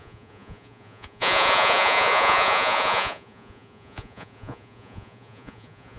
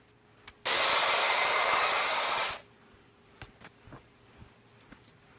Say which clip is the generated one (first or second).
first